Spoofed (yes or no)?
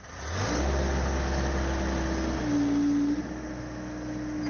no